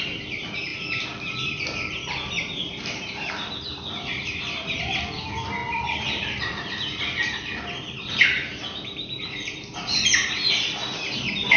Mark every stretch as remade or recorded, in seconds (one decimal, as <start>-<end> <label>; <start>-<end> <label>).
0.0-10.8 remade; 10.8-11.6 recorded

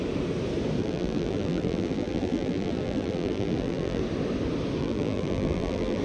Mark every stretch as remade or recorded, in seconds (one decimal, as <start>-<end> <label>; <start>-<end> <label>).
0.0-0.8 recorded; 0.8-4.0 remade; 4.0-4.8 recorded; 4.8-6.0 remade